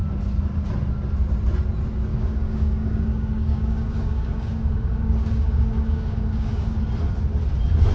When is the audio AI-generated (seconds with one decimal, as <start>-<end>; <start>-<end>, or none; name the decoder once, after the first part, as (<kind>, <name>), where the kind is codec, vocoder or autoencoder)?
2.1-6.8 (codec, DAC)